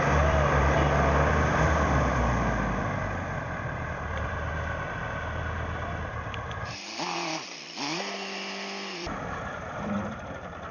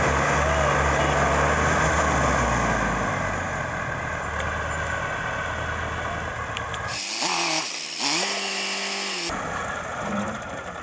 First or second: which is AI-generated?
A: first